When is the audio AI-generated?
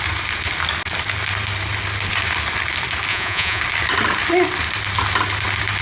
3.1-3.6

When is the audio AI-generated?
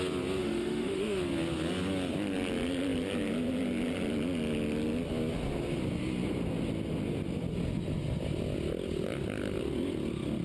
0.4-1.2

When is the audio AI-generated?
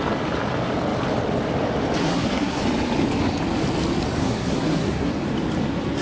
2.0-2.6; 4.2-5.1